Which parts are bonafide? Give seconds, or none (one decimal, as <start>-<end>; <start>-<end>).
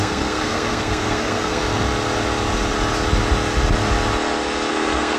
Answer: 1.6-4.7